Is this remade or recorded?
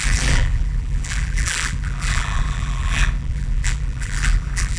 remade